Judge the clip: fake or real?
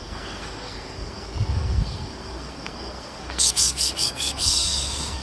fake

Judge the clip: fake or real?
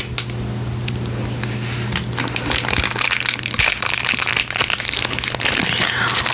real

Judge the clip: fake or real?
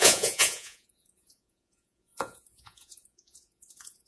fake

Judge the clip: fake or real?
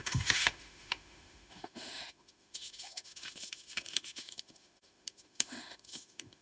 fake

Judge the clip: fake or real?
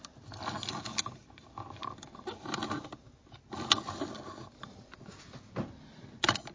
real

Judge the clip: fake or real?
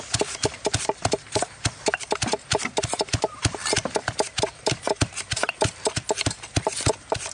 fake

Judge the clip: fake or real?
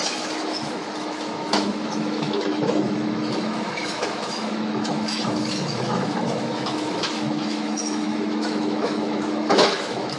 fake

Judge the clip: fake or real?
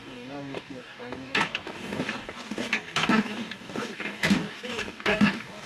fake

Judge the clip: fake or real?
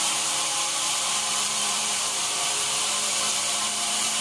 fake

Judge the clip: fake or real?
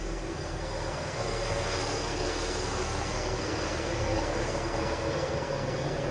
fake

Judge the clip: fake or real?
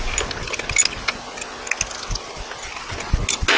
real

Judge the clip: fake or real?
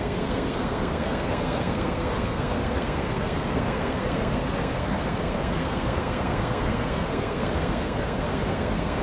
fake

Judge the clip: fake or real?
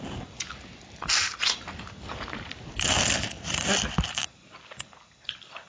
real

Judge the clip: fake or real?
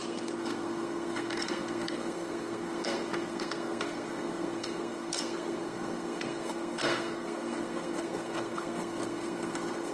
fake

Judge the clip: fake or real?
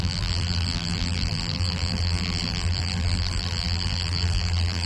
fake